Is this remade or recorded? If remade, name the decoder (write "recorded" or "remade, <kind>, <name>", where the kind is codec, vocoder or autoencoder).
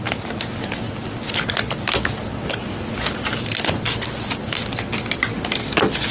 recorded